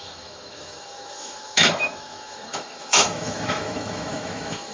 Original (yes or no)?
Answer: no